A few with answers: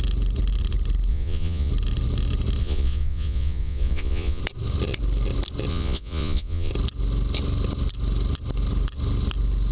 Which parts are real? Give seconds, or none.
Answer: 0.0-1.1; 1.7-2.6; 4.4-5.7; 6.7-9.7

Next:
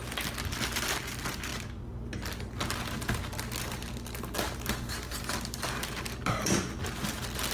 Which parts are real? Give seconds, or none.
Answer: 0.0-7.5

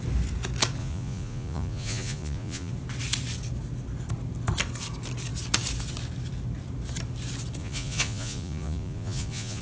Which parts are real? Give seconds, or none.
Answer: 0.0-0.8; 2.7-7.6